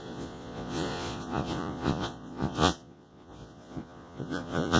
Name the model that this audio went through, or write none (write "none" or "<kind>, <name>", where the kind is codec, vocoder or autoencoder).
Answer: vocoder, Vocos